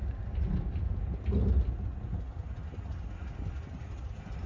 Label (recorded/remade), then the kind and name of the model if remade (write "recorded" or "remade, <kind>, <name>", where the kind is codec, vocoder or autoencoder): recorded